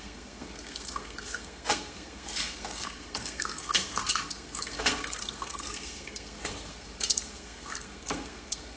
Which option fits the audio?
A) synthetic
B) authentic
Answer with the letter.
A